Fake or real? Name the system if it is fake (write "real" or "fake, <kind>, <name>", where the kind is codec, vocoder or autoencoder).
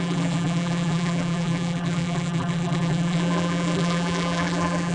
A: fake, vocoder, BigVGAN v2